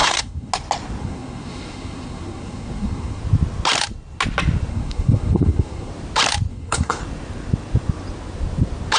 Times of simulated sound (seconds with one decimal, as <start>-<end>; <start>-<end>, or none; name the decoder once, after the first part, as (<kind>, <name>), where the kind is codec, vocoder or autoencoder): 0.0-0.5 (codec, SNAC); 1.0-3.2; 4.7-5.9; 6.5-7.0